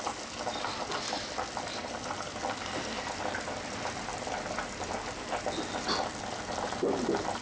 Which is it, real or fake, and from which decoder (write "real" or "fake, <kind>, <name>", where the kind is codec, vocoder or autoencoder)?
real